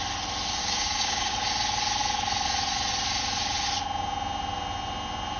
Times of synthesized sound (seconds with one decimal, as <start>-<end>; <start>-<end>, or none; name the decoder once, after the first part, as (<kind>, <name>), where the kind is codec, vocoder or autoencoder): 0.6-1.3 (codec, DAC)